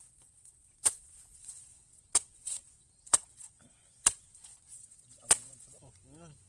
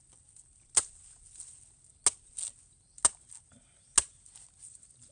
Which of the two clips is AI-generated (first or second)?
first